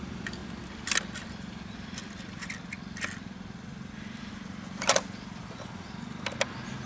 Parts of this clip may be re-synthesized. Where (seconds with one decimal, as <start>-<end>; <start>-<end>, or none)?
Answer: none